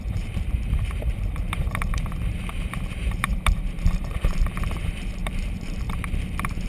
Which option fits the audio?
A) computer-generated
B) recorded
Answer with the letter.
A